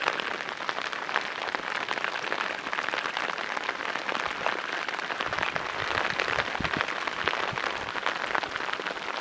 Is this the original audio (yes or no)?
yes